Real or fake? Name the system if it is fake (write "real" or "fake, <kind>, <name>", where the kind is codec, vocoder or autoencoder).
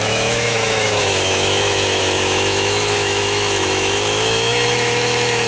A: fake, autoencoder, DAC-VAE